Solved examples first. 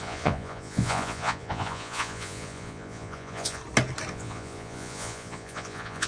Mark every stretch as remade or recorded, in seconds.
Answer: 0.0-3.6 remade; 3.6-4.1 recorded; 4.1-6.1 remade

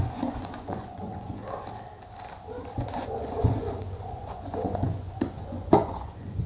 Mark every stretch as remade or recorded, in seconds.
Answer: 0.0-1.4 remade; 1.4-2.7 recorded; 2.7-6.5 remade

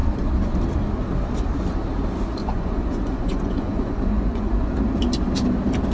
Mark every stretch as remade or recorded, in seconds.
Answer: 0.0-2.4 recorded; 2.4-4.7 remade; 4.7-5.9 recorded

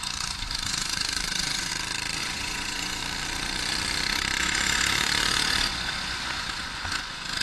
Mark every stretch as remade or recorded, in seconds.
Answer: 0.0-1.7 remade; 1.7-2.2 recorded; 2.2-3.0 remade; 3.0-4.4 recorded; 4.4-7.4 remade

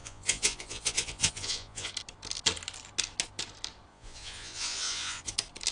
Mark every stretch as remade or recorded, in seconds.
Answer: 0.0-1.9 remade; 1.9-3.9 recorded; 3.9-5.3 remade; 5.3-5.7 recorded

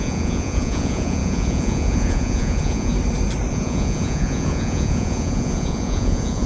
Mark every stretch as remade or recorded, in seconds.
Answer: 0.0-2.9 remade; 2.9-3.5 recorded; 3.5-6.5 remade

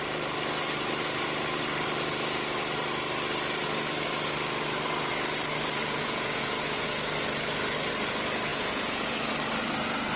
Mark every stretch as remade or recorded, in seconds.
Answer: 0.0-5.8 recorded; 5.8-6.9 remade; 6.9-8.5 recorded; 8.5-9.3 remade; 9.3-10.2 recorded